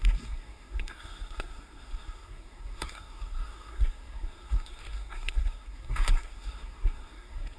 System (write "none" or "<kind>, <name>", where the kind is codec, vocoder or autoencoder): codec, SNAC